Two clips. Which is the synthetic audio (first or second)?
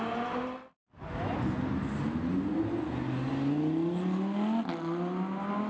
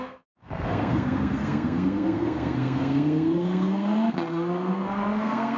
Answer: second